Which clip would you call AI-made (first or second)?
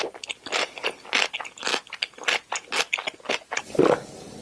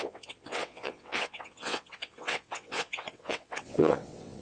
second